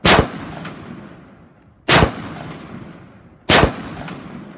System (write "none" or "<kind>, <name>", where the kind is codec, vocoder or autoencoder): none